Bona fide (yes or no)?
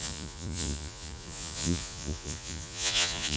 no